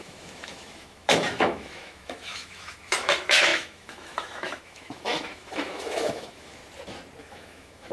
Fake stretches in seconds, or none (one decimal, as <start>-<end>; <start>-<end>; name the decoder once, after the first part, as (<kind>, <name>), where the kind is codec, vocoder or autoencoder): 0.0-6.6 (autoencoder, DAC-VAE); 7.2-7.9